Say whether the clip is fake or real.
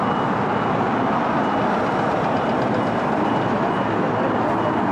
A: real